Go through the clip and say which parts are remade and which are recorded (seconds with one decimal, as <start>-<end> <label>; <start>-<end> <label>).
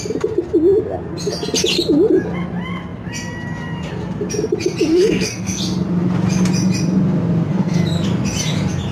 0.0-4.9 recorded; 4.9-5.6 remade; 5.6-7.5 recorded; 7.5-8.1 remade; 8.1-8.9 recorded